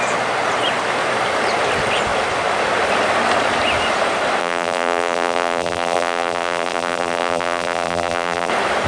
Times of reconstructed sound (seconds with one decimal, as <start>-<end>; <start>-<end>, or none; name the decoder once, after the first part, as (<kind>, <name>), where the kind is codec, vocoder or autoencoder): 4.4-8.5 (vocoder, BigVGAN v2)